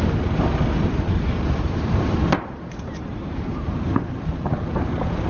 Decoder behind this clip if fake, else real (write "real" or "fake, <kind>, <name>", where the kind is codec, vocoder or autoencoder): fake, vocoder, BigVGAN v2